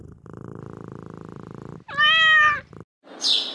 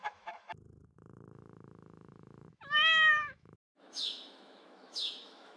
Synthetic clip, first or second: second